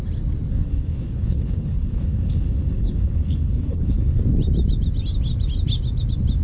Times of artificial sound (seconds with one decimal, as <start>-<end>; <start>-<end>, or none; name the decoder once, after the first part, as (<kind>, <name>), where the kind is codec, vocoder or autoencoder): 0.5-4.2 (codec, HILCodec)